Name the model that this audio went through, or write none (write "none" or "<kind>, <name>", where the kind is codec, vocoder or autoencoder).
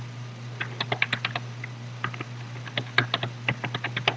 none